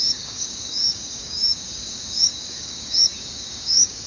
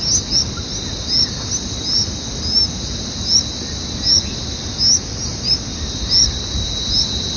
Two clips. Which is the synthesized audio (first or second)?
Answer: first